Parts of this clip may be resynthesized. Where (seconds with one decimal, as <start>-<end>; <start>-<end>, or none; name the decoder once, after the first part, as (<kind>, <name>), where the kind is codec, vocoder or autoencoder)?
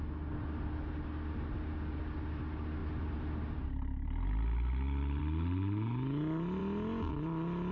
none